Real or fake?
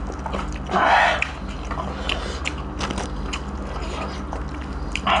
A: real